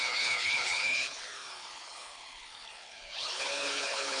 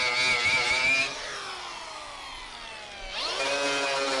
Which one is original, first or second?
second